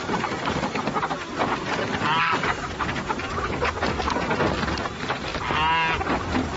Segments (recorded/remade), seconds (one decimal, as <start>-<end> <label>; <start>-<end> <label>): 0.0-6.6 recorded